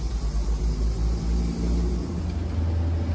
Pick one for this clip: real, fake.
real